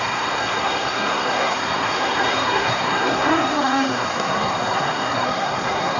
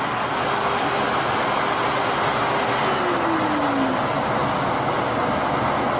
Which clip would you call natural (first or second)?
second